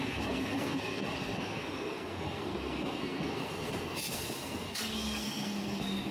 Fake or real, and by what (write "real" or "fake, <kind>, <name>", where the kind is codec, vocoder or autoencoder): fake, codec, SNAC